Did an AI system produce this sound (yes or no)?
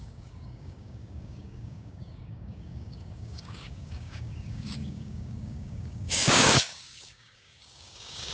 yes